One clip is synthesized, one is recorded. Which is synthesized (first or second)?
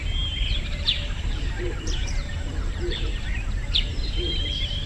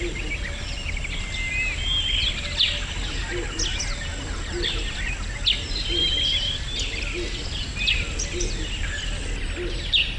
first